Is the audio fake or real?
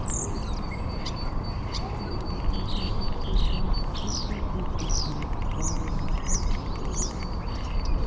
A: real